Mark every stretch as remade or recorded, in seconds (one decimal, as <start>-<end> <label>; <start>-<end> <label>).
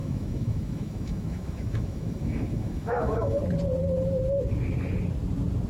0.0-3.4 remade; 3.4-5.7 recorded